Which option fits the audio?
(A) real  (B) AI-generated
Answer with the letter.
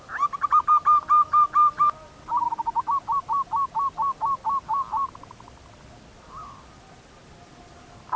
A